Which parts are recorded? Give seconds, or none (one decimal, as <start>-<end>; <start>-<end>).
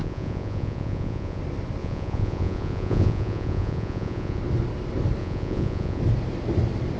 1.4-1.8; 4.4-5.2; 6.0-7.0